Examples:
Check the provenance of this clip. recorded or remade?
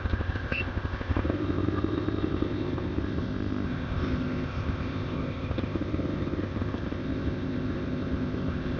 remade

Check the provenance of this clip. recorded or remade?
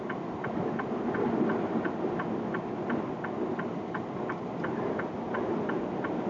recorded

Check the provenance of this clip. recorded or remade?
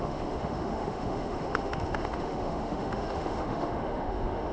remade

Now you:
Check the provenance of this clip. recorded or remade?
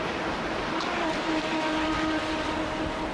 recorded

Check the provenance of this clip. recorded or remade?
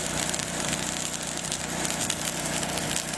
remade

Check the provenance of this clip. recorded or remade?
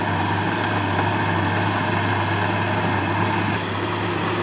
recorded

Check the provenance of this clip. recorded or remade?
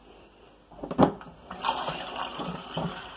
recorded